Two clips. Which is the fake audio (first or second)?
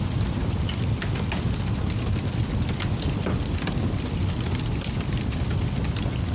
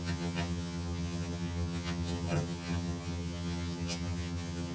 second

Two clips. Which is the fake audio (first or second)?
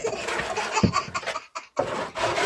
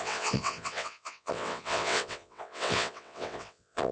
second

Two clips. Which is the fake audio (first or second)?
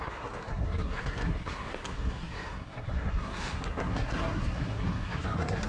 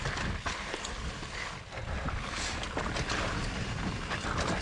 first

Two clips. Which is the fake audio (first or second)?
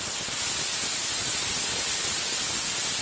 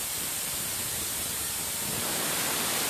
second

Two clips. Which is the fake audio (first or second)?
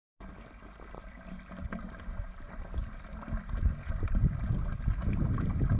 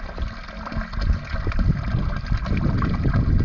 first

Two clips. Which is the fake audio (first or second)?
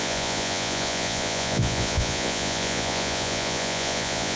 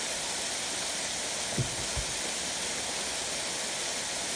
first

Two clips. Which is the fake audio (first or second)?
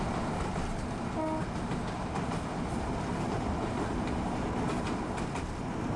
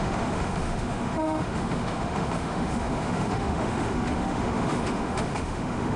second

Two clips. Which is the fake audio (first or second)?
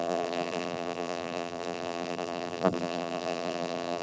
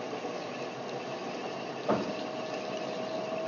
first